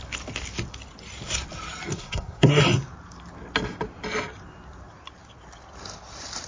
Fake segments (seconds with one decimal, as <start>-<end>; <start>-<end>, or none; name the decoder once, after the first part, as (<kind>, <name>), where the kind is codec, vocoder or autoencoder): 1.9-2.6 (codec, SNAC)